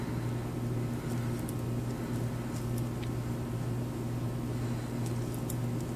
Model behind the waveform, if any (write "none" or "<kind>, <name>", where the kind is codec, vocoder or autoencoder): none